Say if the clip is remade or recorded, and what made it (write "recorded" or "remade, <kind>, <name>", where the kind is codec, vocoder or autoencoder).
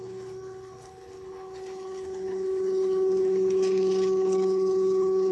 remade, codec, HILCodec